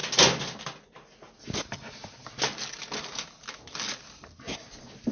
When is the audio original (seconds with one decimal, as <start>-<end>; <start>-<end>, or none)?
0.0-5.1